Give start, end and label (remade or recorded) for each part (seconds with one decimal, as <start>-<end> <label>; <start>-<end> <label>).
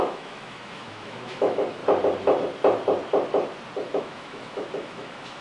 0.0-1.8 remade; 1.8-4.0 recorded; 4.0-5.4 remade